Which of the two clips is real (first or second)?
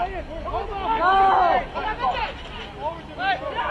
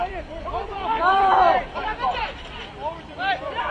first